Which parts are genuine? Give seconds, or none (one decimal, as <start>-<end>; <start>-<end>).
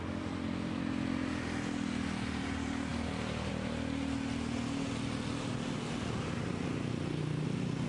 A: 0.0-7.9